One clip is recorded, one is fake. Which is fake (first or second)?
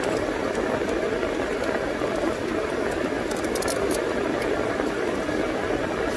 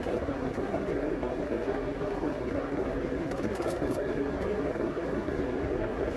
second